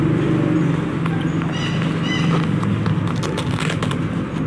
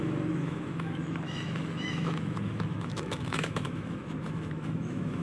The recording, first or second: first